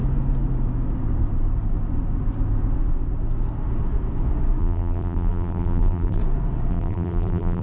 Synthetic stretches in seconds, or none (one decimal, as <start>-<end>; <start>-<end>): 4.6-6.2; 6.7-7.6